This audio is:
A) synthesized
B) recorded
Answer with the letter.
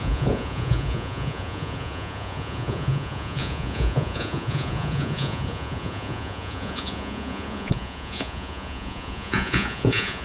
A